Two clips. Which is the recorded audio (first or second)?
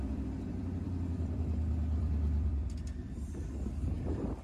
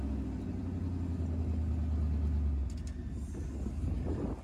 second